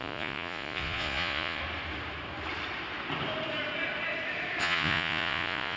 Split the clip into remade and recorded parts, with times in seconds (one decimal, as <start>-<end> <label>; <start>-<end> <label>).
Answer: 0.0-1.6 remade; 1.6-4.6 recorded; 4.6-5.8 remade